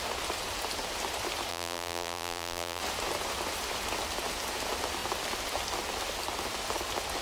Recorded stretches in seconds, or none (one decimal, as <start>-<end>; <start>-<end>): 0.0-1.5; 2.8-7.2